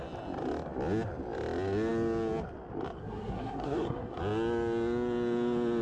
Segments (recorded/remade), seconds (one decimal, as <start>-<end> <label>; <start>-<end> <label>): 0.0-3.0 recorded; 3.0-4.2 remade; 4.2-5.8 recorded